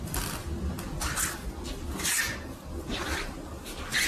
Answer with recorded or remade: recorded